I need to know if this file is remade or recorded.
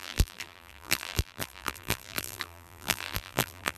remade